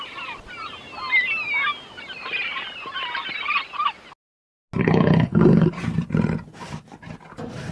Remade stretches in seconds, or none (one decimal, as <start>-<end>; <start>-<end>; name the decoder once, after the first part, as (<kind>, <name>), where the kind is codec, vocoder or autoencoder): 4.8-5.7 (codec, HILCodec)